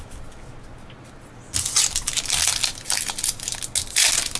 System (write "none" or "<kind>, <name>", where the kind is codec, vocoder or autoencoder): none